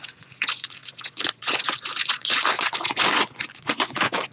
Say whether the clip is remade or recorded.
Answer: remade